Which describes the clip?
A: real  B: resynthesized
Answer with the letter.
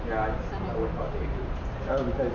A